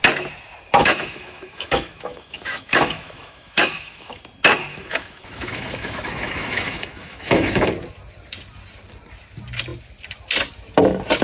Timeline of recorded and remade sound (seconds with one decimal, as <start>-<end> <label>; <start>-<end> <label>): 0.0-0.8 recorded; 0.8-4.2 remade; 4.2-4.7 recorded; 4.7-7.7 remade; 7.7-11.2 recorded